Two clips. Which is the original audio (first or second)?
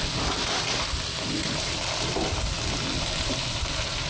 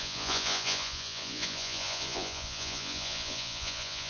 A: first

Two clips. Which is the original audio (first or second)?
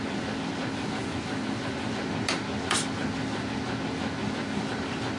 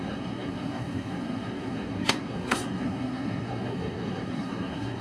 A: first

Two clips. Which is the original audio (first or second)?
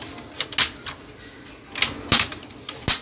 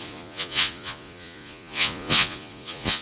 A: first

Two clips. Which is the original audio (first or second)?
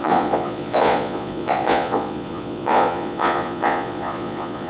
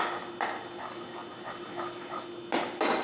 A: second